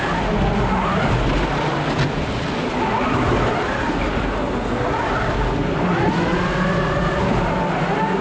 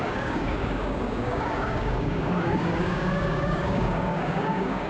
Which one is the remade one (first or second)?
second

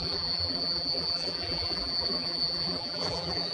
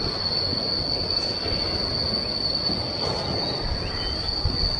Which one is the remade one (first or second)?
first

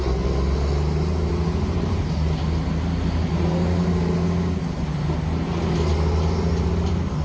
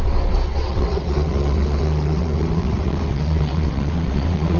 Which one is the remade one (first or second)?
second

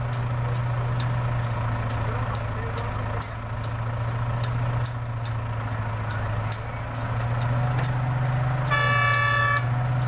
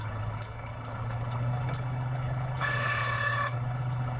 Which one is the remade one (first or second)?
second